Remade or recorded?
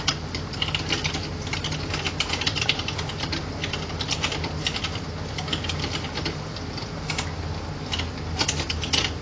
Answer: recorded